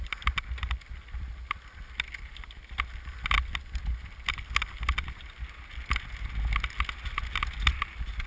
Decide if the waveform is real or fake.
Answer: real